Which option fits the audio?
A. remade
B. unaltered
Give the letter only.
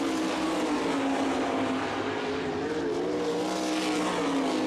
B